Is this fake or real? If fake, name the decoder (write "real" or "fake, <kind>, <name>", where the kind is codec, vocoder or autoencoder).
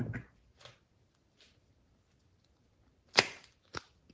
real